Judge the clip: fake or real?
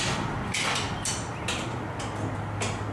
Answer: real